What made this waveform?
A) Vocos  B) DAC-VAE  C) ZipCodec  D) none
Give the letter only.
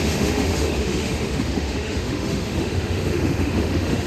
B